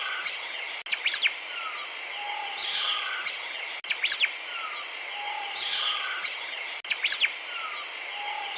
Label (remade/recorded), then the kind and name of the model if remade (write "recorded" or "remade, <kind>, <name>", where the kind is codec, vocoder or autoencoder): recorded